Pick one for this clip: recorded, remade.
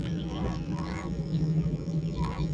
remade